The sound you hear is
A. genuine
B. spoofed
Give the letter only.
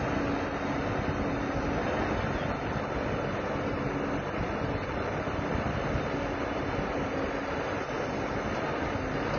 A